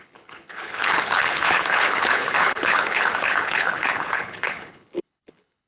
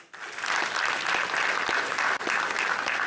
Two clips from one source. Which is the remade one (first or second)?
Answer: first